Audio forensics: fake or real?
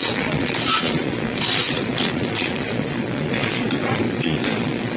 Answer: fake